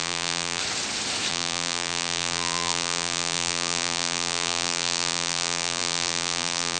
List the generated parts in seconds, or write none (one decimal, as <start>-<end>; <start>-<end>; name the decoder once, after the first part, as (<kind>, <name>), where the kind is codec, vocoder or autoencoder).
0.0-0.6 (vocoder, BigVGAN v2); 1.3-6.8